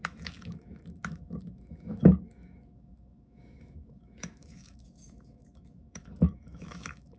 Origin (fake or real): fake